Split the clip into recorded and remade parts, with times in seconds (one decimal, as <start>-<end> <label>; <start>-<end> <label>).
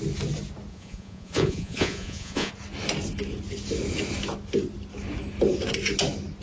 0.0-0.7 recorded; 0.7-2.5 remade; 2.5-6.4 recorded